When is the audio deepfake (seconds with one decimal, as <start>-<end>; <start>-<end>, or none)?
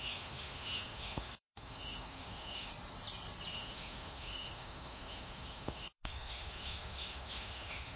0.0-2.7; 3.5-8.0